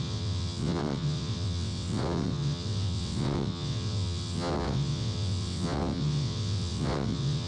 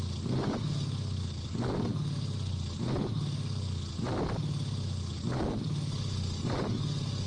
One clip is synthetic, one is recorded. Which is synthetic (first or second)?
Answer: first